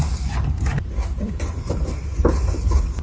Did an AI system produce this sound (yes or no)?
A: no